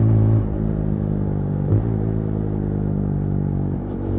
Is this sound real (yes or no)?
no